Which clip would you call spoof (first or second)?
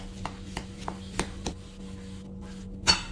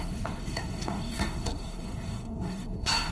second